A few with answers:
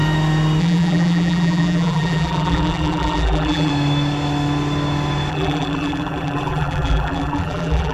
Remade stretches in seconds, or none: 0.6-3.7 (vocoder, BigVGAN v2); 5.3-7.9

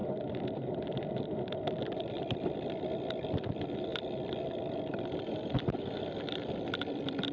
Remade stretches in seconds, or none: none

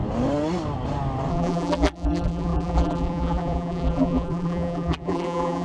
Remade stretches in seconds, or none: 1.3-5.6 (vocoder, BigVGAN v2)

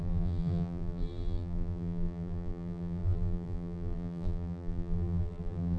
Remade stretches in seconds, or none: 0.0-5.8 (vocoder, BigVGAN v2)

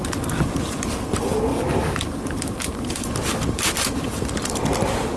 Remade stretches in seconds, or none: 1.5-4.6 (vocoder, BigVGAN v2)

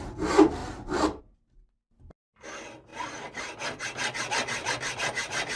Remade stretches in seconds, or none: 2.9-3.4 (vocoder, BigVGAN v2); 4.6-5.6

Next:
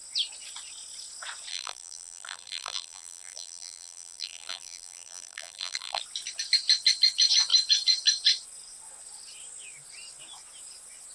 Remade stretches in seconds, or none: 1.5-6.0 (vocoder, BigVGAN v2)

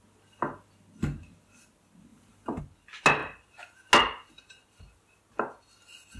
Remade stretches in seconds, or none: 2.1-2.6 (vocoder, BigVGAN v2)